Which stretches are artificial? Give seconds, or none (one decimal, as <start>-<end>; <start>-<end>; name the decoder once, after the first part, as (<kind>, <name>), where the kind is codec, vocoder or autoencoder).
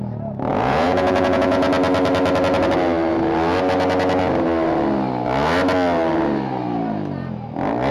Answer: 0.5-1.7 (vocoder, Vocos)